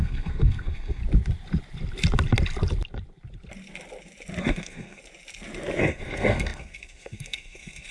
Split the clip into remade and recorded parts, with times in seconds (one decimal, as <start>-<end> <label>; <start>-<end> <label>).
0.0-1.0 remade; 1.0-4.4 recorded; 4.4-5.0 remade; 5.0-5.8 recorded; 5.8-7.9 remade